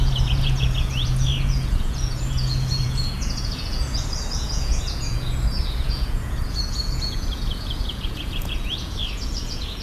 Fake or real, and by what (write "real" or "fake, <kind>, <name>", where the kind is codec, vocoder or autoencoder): fake, vocoder, Vocos